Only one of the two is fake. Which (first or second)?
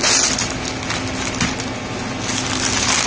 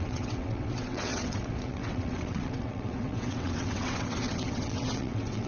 second